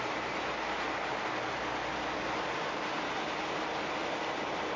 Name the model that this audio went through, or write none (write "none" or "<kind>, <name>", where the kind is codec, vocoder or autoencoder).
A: none